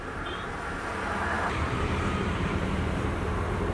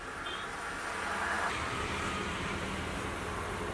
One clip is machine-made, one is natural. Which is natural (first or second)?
second